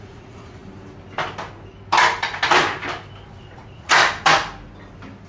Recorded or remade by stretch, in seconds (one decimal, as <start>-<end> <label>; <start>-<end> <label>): 0.0-0.6 remade; 0.6-3.4 recorded; 3.4-4.0 remade; 4.0-5.3 recorded